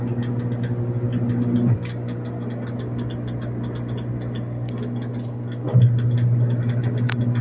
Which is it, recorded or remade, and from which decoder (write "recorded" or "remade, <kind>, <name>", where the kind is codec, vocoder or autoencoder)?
recorded